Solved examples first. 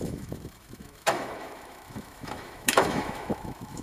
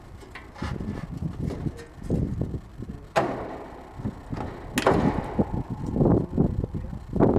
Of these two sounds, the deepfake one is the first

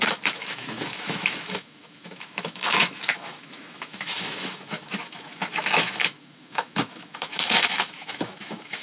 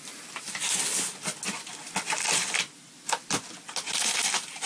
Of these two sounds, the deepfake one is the first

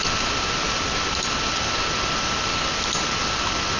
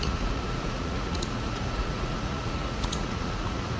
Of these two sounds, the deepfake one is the second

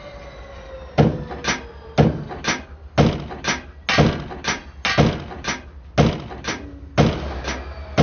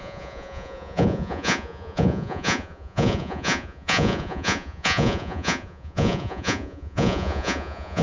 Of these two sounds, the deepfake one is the second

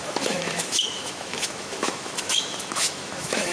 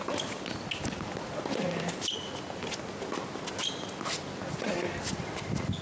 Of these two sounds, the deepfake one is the first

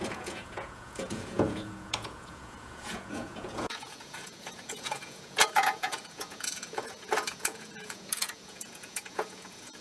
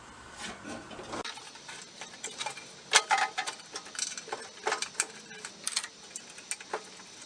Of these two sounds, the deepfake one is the first